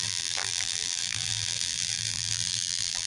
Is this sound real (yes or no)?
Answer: no